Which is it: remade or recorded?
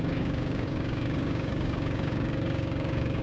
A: remade